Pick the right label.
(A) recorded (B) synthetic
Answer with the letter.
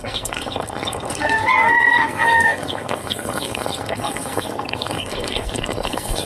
B